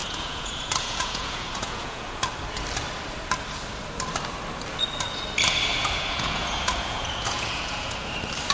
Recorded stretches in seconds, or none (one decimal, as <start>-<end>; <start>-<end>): 2.2-5.7; 8.1-8.5